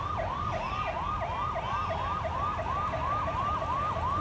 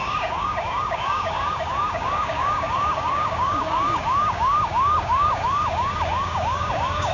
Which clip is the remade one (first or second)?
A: second